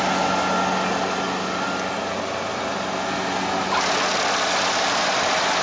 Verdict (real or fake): real